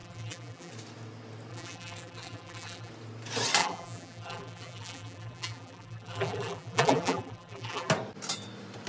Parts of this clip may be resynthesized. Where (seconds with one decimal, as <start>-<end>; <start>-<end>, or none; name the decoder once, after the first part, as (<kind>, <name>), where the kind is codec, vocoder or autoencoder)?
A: 0.0-0.7 (vocoder, BigVGAN v2); 1.5-2.9; 3.6-7.9